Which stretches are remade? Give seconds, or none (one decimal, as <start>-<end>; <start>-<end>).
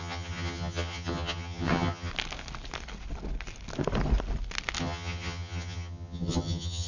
0.0-2.1; 4.8-6.9